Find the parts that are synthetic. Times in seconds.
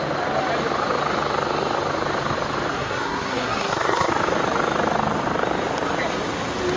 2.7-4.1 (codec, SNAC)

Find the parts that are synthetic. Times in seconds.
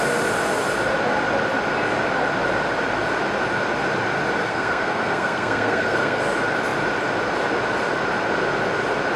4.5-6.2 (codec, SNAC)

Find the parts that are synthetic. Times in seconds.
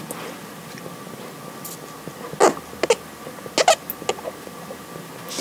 none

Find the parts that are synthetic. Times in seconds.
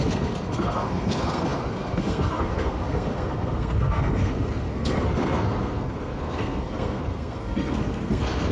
0.0-8.5 (codec, SNAC)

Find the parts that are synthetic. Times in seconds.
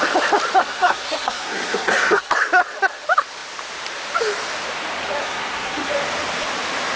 0.6-2.3 (codec, SNAC); 5.2-5.9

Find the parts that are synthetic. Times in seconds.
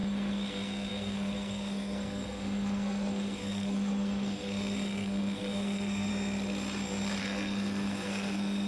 0.0-6.1 (codec, SNAC); 7.2-8.7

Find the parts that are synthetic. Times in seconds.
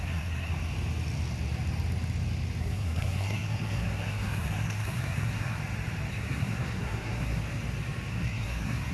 0.0-0.5 (codec, SNAC); 2.6-5.6; 6.1-7.4; 8.1-8.9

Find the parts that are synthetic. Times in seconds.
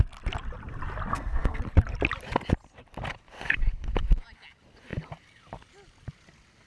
1.1-1.6 (codec, SNAC)